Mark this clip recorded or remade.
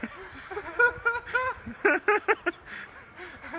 recorded